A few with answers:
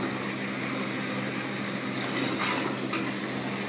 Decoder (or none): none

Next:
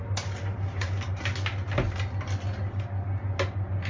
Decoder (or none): none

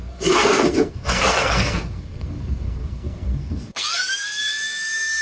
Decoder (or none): codec, SNAC